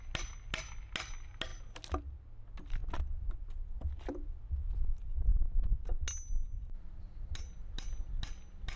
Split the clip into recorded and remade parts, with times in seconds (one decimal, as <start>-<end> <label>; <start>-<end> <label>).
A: 0.0-2.8 recorded; 2.8-4.8 remade; 4.8-8.8 recorded